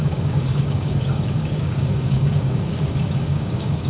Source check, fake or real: fake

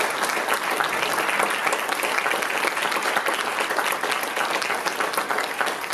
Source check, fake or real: real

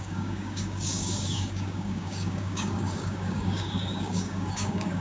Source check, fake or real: fake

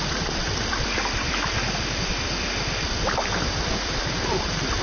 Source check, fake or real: real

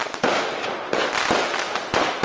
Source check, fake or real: real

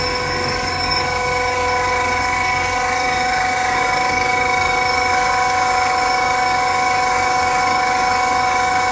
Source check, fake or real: fake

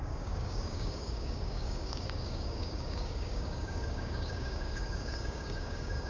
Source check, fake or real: fake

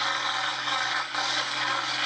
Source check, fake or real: fake